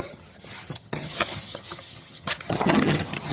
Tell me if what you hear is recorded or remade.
remade